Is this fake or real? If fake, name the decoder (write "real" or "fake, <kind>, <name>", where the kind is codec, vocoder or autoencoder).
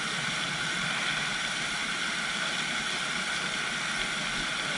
real